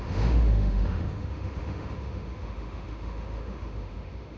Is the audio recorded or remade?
remade